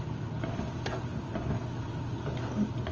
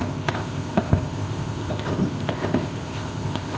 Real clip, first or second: first